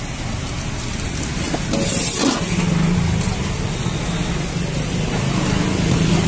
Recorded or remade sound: recorded